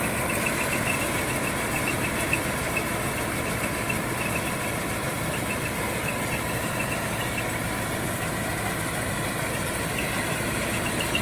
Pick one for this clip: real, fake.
real